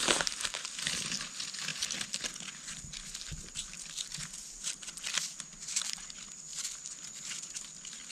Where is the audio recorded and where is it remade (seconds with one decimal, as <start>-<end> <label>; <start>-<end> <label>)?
0.0-8.1 recorded